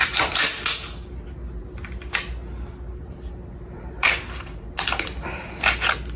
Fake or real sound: real